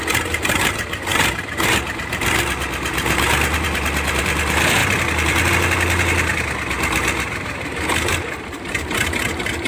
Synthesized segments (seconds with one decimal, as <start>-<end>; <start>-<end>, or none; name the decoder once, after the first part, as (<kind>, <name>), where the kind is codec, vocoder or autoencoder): 0.0-9.7 (vocoder, BigVGAN v2)